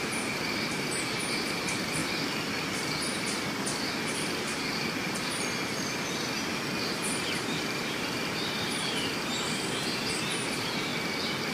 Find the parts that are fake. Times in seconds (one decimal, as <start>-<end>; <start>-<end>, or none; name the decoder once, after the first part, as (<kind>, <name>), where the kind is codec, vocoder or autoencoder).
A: 0.0-2.0 (vocoder, BigVGAN v2); 6.9-10.9